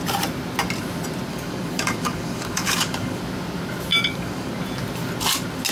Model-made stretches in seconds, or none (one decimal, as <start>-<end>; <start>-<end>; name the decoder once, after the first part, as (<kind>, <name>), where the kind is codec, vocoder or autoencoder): 1.3-3.2 (codec, DAC); 3.9-4.5